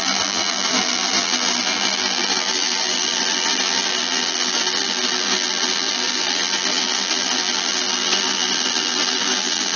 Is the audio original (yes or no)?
no